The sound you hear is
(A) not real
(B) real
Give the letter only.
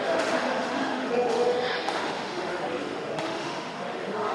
A